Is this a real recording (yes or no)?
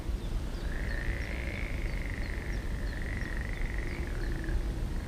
yes